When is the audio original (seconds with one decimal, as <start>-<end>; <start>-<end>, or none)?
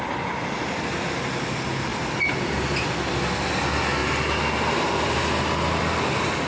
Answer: 0.0-1.9; 2.5-6.5